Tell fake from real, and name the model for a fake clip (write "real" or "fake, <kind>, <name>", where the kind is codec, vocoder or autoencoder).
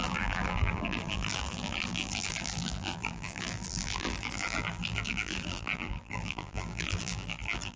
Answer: fake, vocoder, BigVGAN v2